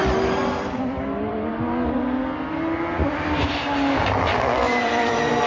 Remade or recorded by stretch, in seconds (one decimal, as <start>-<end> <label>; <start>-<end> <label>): 0.0-1.5 remade; 1.5-4.8 recorded; 4.8-5.5 remade